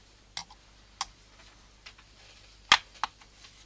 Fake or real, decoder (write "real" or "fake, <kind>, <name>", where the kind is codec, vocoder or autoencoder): real